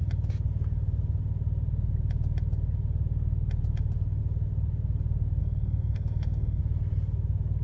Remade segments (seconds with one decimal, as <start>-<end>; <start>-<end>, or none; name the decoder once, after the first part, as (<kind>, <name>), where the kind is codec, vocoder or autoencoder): 5.4-6.6 (codec, SNAC)

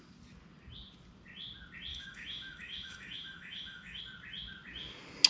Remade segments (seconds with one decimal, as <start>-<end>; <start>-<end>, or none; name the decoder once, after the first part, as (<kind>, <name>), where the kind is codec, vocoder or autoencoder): 1.9-4.0 (autoencoder, DAC-VAE)

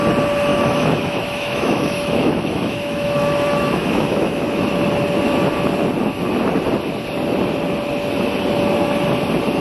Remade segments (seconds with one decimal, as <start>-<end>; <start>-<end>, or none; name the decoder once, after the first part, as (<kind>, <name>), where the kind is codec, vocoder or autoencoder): 0.5-4.6 (autoencoder, DAC-VAE)

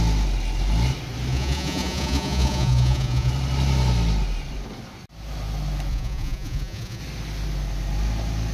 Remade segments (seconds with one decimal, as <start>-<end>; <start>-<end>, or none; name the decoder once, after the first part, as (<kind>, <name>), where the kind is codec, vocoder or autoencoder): 1.3-3.3 (vocoder, Vocos); 5.9-7.0

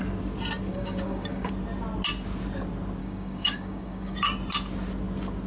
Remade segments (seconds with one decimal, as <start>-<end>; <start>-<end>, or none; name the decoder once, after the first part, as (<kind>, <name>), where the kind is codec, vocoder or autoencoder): 0.7-1.5 (codec, DAC); 3.0-4.2